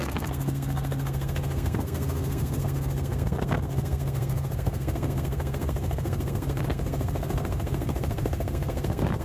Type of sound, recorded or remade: remade